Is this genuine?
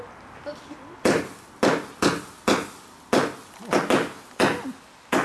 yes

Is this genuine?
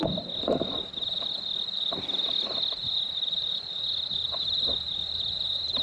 yes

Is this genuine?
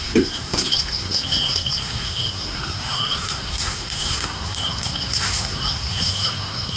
no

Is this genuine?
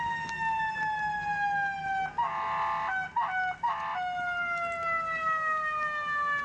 yes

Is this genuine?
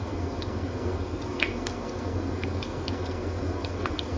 no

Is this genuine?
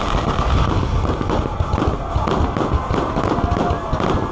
yes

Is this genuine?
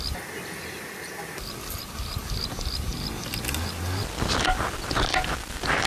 yes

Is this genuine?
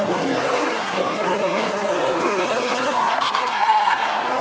no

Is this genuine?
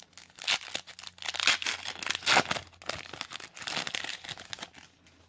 yes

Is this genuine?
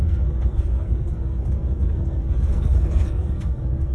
no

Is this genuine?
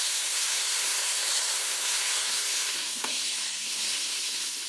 no